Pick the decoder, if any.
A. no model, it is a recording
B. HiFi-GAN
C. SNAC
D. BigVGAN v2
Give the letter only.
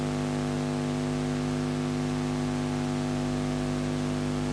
A